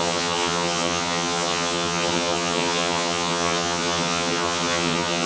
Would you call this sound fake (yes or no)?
yes